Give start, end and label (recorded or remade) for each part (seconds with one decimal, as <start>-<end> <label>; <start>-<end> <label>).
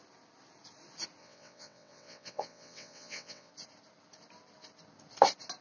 0.0-1.2 recorded; 1.2-3.5 remade; 3.5-5.6 recorded